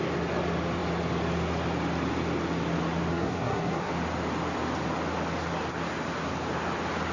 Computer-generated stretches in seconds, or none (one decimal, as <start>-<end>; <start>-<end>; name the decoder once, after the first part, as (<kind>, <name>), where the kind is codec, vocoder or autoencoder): 3.1-3.9 (codec, SNAC)

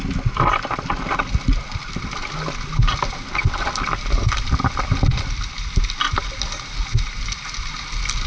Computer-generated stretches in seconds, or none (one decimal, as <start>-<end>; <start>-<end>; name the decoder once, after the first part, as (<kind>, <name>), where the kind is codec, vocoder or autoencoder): none

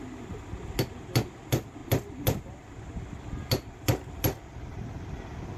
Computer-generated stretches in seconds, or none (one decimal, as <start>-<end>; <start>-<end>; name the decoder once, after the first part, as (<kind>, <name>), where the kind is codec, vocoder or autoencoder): none

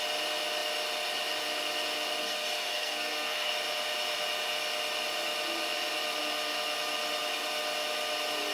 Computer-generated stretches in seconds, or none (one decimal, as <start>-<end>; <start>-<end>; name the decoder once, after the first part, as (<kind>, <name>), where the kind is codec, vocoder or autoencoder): 2.2-3.5 (codec, SNAC)